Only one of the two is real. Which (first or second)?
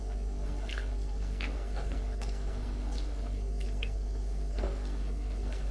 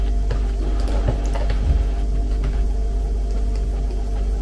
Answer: second